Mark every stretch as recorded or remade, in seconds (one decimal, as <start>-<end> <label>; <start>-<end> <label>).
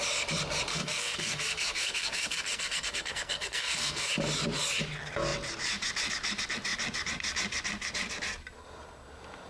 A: 0.0-0.7 recorded; 0.7-4.1 remade; 4.1-9.5 recorded